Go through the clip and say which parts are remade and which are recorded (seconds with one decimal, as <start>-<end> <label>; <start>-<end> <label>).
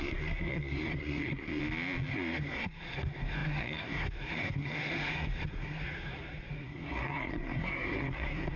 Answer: 0.0-1.6 remade; 1.6-2.1 recorded; 2.1-8.6 remade